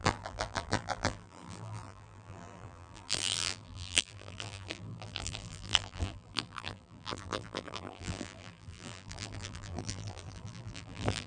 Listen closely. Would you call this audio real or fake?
fake